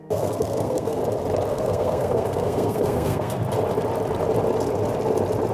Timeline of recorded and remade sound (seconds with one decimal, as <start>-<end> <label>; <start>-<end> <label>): 0.0-1.0 remade; 1.0-1.5 recorded; 1.5-3.4 remade; 3.4-5.5 recorded